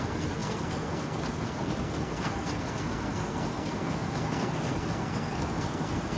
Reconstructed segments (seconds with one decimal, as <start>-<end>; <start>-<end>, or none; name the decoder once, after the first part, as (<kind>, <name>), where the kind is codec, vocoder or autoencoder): 0.0-6.2 (codec, SNAC)